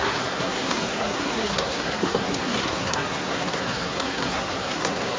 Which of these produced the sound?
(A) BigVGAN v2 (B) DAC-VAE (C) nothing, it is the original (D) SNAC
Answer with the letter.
D